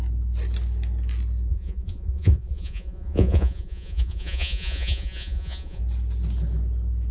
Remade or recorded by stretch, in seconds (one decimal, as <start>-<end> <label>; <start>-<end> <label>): 0.0-1.5 recorded; 1.5-5.8 remade; 5.8-7.1 recorded